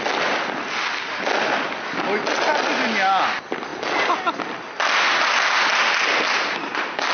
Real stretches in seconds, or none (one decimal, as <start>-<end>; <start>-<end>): 0.0-7.1